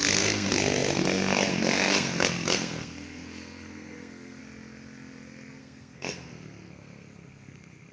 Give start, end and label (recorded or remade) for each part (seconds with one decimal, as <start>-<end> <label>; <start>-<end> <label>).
0.0-4.4 remade; 4.4-5.6 recorded; 5.6-7.9 remade